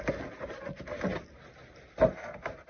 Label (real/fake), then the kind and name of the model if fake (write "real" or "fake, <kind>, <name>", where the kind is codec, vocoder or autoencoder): real